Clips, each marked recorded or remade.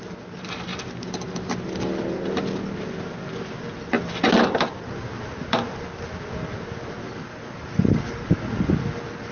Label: recorded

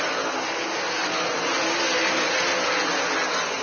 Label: recorded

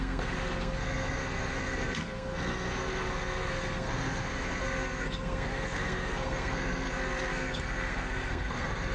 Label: remade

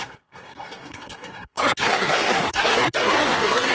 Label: remade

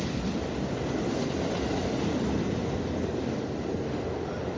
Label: recorded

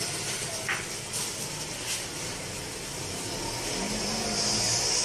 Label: recorded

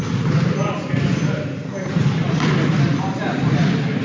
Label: recorded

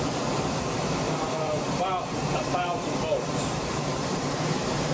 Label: remade